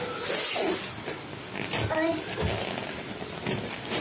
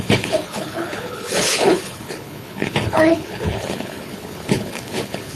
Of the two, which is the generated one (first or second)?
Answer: second